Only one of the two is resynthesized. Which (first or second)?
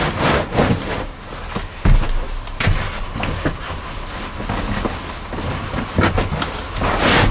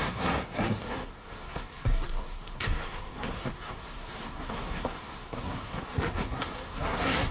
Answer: second